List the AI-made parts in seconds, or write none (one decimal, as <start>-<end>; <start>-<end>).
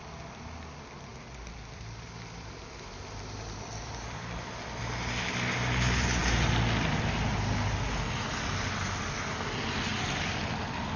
1.1-4.8